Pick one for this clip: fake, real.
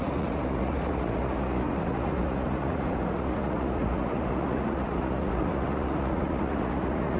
fake